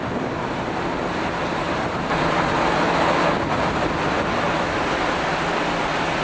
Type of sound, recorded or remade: recorded